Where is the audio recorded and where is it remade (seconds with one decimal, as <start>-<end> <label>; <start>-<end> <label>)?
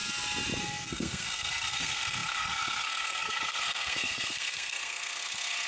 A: 0.0-0.6 recorded; 0.6-5.7 remade